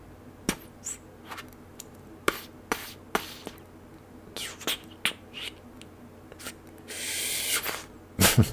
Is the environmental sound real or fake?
real